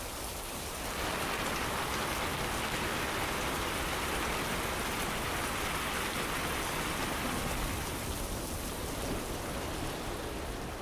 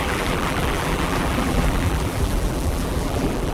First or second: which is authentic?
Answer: first